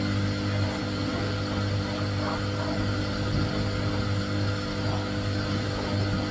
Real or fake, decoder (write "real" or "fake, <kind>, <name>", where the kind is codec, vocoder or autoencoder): real